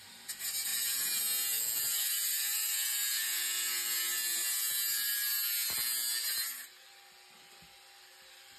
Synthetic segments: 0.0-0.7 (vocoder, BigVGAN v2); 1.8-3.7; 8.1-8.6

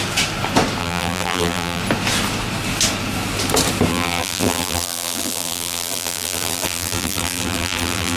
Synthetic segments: 0.8-1.8 (vocoder, BigVGAN v2); 3.9-8.2